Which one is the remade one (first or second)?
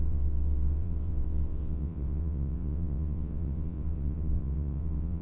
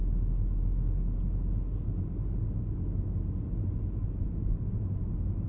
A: first